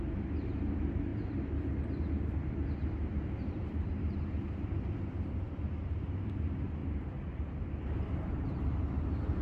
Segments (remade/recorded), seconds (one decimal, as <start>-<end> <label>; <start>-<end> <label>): 0.0-9.4 remade